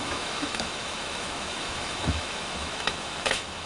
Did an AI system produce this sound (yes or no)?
yes